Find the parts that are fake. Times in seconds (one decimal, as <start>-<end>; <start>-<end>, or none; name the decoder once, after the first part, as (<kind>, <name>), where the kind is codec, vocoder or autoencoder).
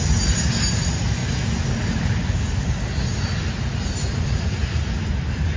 none